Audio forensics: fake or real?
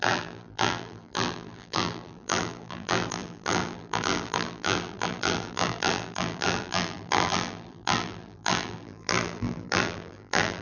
fake